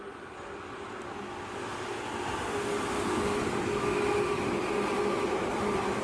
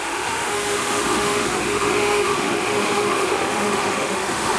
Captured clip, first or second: first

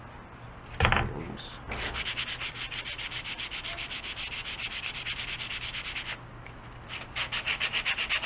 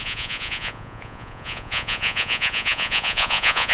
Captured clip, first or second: first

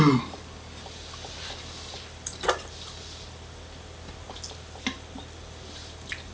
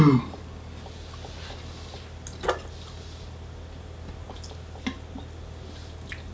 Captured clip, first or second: second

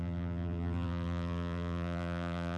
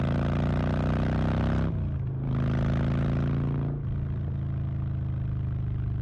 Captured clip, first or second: second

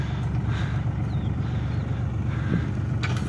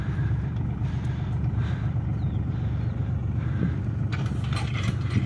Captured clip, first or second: first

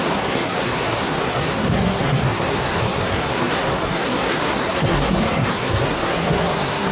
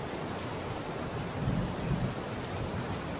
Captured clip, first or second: second